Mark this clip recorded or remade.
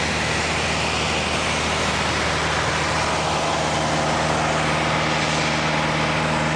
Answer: recorded